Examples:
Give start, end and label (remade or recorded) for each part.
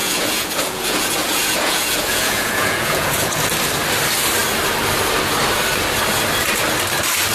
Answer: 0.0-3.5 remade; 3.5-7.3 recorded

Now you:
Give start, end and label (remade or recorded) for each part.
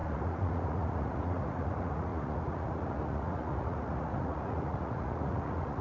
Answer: 0.0-5.8 remade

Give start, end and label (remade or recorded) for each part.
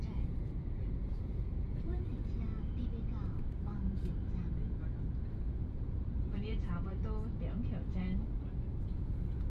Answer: 0.0-2.1 remade; 2.1-5.4 recorded; 5.4-6.9 remade; 6.9-8.8 recorded; 8.8-9.5 remade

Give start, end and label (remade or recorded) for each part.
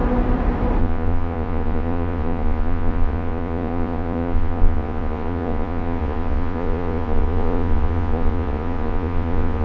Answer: 0.0-0.8 recorded; 0.8-9.6 remade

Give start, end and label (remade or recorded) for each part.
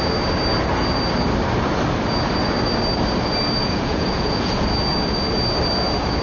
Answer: 0.0-3.6 recorded; 3.6-4.7 remade; 4.7-6.2 recorded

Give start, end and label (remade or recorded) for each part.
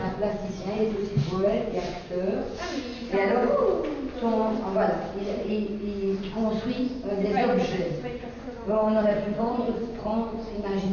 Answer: 0.0-3.4 remade; 3.4-8.0 recorded; 8.0-10.9 remade